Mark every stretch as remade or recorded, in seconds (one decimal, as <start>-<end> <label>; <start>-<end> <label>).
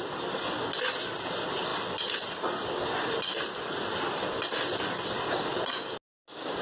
0.0-6.6 recorded